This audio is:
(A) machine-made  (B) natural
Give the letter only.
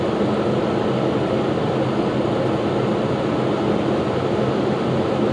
B